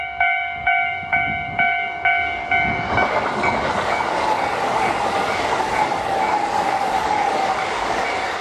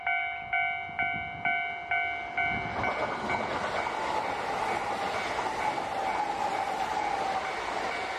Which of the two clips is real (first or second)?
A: second